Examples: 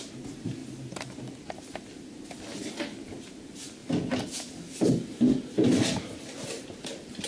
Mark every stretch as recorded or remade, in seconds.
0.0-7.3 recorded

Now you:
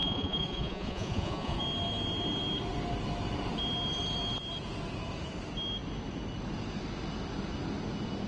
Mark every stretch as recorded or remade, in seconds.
0.0-1.6 remade; 1.6-8.3 recorded